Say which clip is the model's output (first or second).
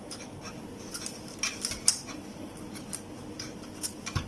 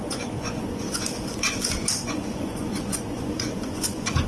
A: second